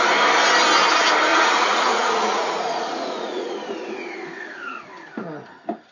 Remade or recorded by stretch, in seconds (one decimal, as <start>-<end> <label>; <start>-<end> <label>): 0.0-1.3 recorded; 1.3-4.8 remade; 4.8-5.9 recorded

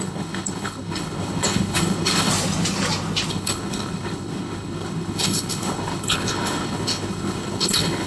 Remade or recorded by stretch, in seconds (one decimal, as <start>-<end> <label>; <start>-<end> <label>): 0.0-2.3 remade; 2.3-3.3 recorded; 3.3-8.1 remade

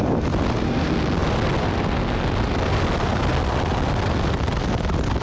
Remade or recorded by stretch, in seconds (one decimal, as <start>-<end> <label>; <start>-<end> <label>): 0.0-5.2 recorded

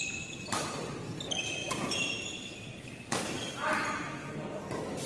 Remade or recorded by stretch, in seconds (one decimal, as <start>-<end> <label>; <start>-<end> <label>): 0.0-5.1 recorded

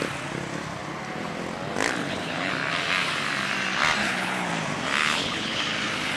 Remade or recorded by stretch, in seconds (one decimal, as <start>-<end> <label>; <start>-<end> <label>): 0.0-2.0 recorded; 2.0-2.5 remade; 2.5-4.0 recorded; 4.0-4.5 remade; 4.5-5.0 recorded; 5.0-5.6 remade; 5.6-6.2 recorded

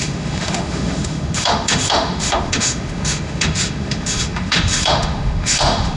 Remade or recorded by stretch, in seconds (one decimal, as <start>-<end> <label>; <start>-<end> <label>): 0.0-6.0 remade

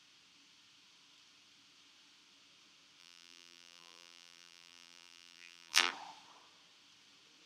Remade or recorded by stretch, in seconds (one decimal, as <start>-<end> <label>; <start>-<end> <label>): 0.0-3.0 recorded; 3.0-5.9 remade; 5.9-7.5 recorded